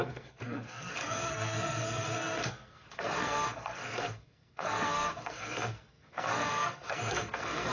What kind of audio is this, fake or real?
fake